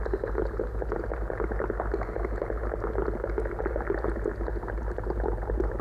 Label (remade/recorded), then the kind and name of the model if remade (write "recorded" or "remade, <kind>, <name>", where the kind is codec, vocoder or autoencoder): recorded